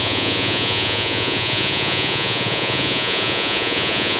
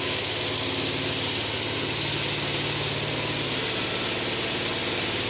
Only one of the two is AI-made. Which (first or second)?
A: first